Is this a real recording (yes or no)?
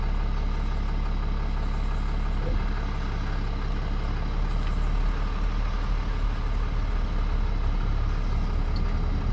yes